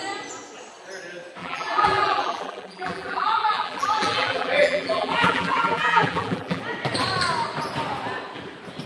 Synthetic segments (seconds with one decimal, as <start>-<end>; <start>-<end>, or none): 1.4-6.6